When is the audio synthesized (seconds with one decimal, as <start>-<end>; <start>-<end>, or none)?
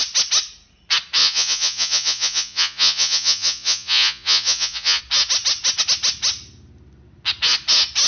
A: 1.2-5.0